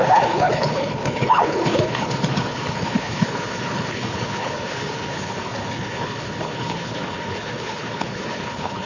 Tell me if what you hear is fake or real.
fake